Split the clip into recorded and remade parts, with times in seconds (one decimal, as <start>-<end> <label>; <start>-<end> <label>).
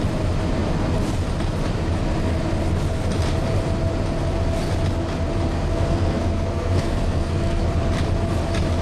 0.0-5.7 recorded; 5.7-7.6 remade; 7.6-8.8 recorded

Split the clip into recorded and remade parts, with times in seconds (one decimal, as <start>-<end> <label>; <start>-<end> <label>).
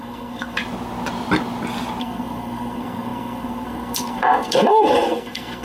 0.0-0.6 remade; 0.6-2.0 recorded; 2.0-5.6 remade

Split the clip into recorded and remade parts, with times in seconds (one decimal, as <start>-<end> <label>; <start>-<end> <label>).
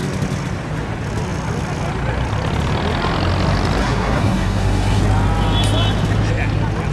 0.0-3.8 recorded; 3.8-5.0 remade; 5.0-6.9 recorded